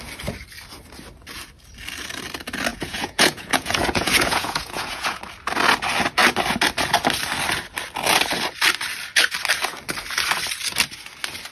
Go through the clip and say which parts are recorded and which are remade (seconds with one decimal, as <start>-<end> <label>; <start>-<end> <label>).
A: 0.0-2.7 recorded; 2.7-5.2 remade; 5.2-11.5 recorded